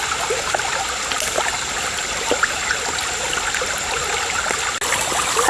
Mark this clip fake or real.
real